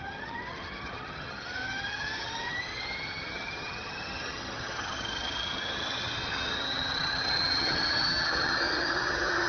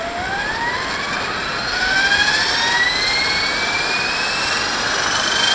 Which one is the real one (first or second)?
second